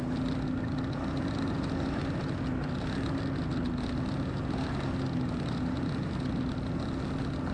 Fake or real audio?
real